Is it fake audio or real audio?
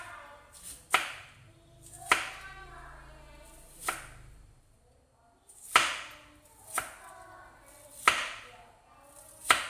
real